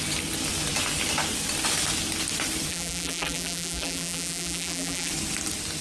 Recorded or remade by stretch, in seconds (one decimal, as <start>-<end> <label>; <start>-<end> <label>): 0.0-2.7 recorded; 2.7-5.1 remade; 5.1-5.8 recorded